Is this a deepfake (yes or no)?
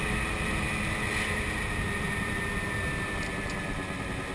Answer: no